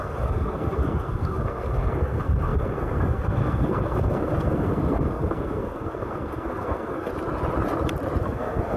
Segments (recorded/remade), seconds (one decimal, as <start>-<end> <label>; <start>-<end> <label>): 0.0-7.1 remade; 7.1-8.2 recorded; 8.2-8.8 remade

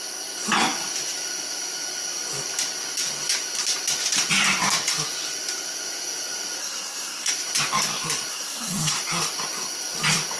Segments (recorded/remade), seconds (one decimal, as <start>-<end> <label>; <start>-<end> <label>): 0.0-6.6 recorded; 6.6-7.3 remade; 7.3-8.3 recorded; 8.3-9.0 remade; 9.0-10.4 recorded

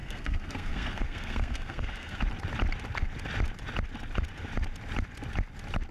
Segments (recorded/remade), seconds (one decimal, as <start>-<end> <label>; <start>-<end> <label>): 0.0-2.2 remade; 2.2-5.9 recorded

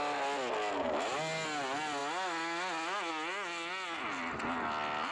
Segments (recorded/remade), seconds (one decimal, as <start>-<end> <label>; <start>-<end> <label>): 0.0-5.1 recorded

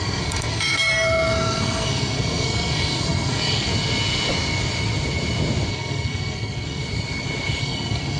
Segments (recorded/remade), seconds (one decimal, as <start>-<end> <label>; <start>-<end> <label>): 0.0-3.7 remade; 3.7-5.7 recorded; 5.7-6.8 remade; 6.8-7.6 recorded; 7.6-8.2 remade